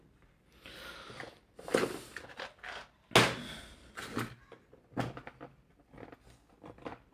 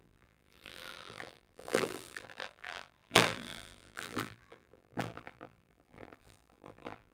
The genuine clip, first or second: first